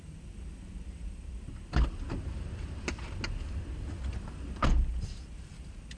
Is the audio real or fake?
real